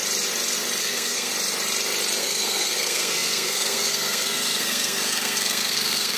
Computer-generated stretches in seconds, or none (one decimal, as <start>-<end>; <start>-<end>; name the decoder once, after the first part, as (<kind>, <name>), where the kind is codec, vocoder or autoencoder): 0.8-1.3 (codec, SNAC); 2.2-6.2